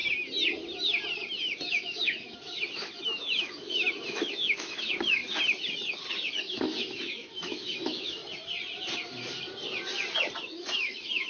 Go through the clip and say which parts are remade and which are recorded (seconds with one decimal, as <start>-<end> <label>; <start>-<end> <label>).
0.0-1.7 recorded; 1.7-5.2 remade; 5.2-6.3 recorded; 6.3-8.2 remade; 8.2-10.4 recorded; 10.4-11.3 remade